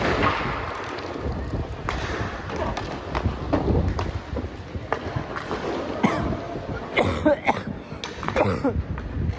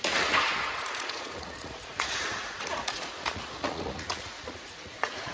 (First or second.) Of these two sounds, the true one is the first